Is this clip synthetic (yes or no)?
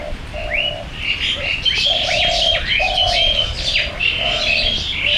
yes